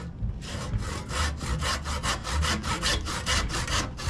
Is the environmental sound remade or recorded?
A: recorded